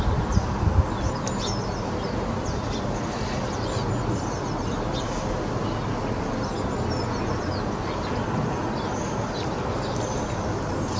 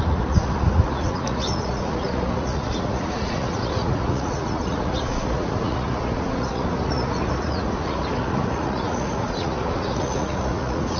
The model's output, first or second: second